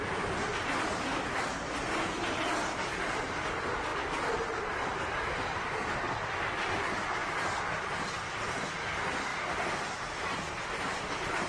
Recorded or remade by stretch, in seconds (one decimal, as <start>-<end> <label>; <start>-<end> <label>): 0.0-11.5 recorded